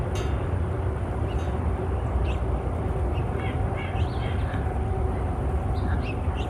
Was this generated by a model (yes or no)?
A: no